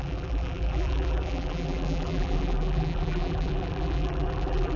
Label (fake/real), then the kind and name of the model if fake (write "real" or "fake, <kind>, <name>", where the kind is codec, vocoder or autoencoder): fake, vocoder, BigVGAN v2